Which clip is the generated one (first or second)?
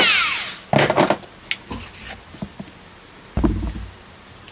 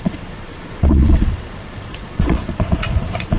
second